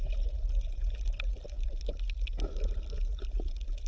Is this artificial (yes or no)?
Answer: no